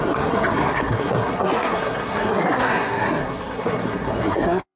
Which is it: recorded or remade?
remade